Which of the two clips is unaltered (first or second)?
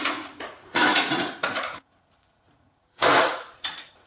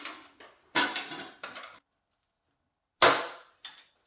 second